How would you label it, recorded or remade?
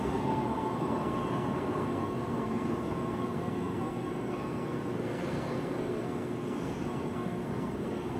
remade